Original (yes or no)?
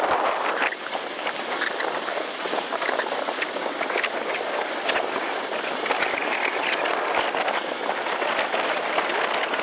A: yes